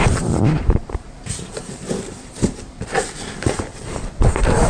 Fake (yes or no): yes